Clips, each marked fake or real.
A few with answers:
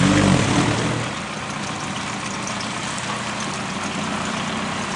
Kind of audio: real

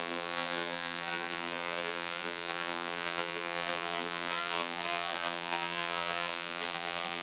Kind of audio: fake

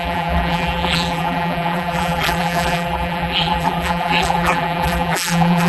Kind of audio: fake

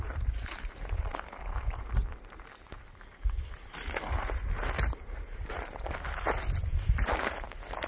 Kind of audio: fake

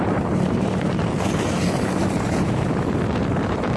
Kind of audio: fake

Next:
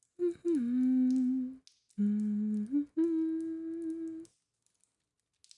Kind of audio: real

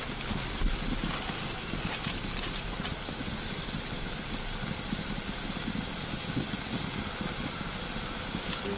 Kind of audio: real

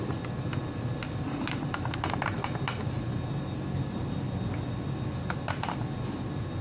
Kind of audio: real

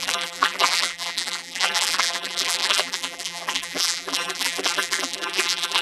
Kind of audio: fake